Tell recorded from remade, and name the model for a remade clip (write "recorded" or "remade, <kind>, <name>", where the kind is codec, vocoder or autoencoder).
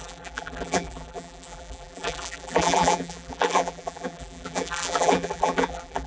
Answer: remade, vocoder, BigVGAN v2